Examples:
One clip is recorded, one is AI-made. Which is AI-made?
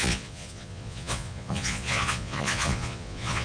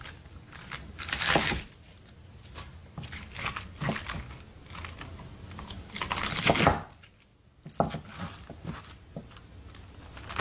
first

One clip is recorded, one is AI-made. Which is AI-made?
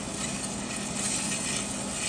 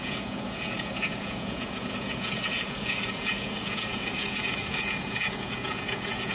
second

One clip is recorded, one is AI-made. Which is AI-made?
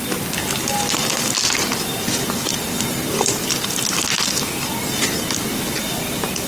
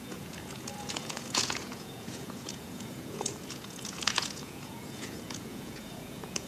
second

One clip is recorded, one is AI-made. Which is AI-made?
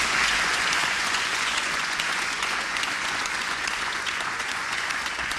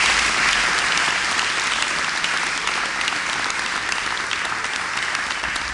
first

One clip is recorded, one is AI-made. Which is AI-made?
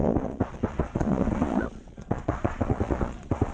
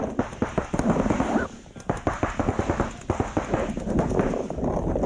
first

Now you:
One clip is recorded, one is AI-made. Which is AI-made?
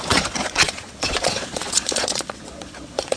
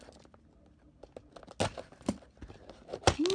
first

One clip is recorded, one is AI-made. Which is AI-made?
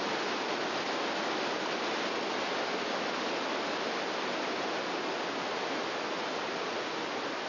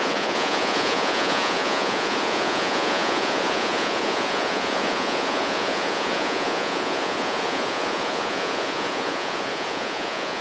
second